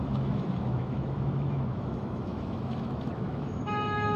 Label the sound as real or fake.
fake